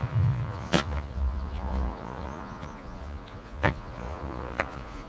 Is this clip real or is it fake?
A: fake